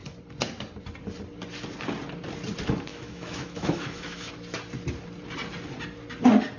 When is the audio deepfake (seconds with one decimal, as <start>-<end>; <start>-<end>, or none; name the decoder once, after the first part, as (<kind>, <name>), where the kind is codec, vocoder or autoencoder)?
2.9-4.3 (autoencoder, DAC-VAE)